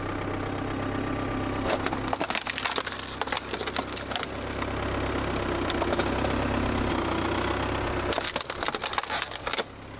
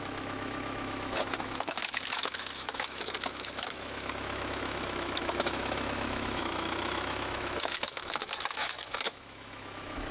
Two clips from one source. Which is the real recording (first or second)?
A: first